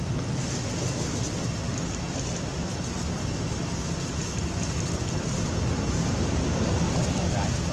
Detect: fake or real real